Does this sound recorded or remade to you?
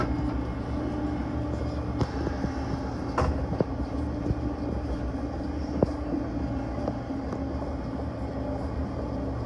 recorded